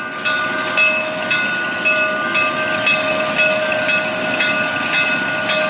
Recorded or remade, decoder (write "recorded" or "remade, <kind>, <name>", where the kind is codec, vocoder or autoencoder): recorded